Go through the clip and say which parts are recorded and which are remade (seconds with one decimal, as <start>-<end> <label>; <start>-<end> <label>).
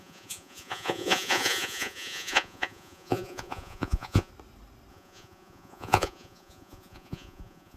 0.0-4.3 remade; 4.3-4.9 recorded; 4.9-7.8 remade